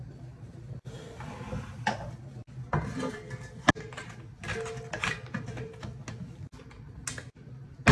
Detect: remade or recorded recorded